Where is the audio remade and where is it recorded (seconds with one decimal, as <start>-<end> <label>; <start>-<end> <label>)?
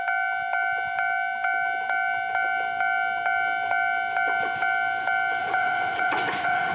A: 0.0-5.4 recorded; 5.4-6.7 remade